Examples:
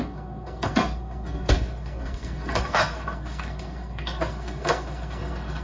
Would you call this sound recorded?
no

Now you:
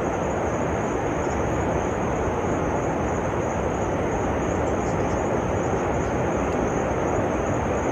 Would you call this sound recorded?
yes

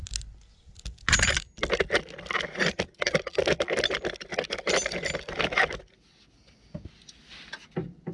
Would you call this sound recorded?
yes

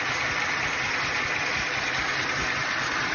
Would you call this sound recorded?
yes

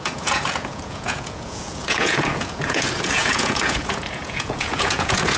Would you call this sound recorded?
no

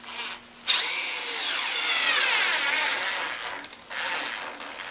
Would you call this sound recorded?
yes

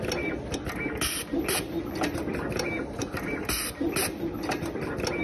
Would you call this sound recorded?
yes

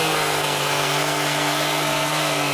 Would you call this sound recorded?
no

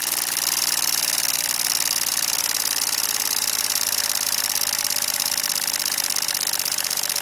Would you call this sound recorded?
no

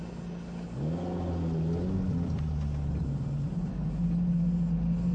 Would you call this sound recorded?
yes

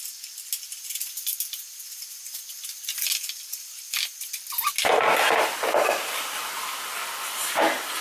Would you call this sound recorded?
yes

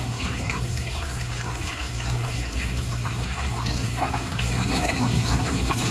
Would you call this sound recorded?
no